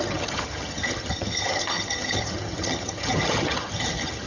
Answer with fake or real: fake